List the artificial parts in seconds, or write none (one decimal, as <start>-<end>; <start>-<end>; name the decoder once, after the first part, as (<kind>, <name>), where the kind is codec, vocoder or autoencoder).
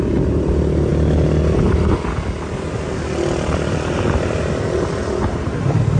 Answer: none